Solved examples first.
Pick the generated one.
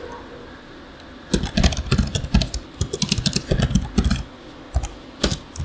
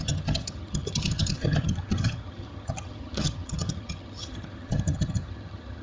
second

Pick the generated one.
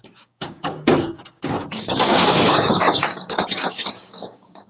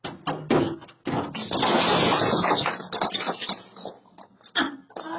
first